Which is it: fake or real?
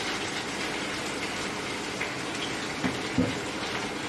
real